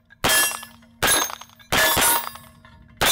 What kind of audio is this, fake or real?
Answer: real